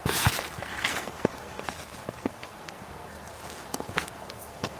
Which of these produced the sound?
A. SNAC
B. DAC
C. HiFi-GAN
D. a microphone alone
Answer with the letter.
A